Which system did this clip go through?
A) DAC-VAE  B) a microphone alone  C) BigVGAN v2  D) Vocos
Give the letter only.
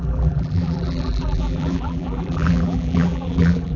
C